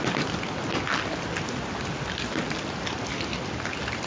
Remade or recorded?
recorded